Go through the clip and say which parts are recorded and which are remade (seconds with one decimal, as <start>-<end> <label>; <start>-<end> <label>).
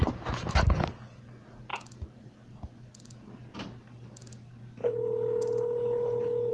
0.0-4.8 recorded; 4.8-6.5 remade